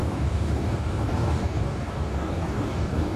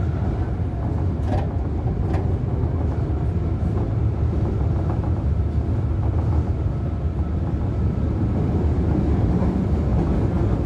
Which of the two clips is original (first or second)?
second